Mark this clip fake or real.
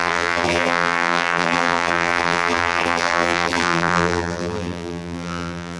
fake